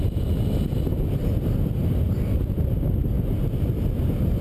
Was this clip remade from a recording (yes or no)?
no